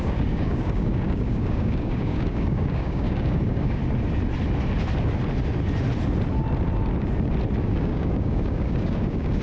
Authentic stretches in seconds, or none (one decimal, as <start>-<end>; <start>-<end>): 3.8-7.6